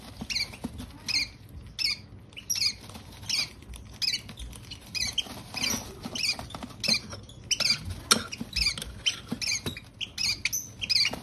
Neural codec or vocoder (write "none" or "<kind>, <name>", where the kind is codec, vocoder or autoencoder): none